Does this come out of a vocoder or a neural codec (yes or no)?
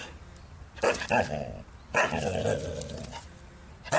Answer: no